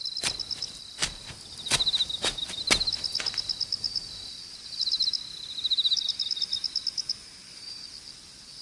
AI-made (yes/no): no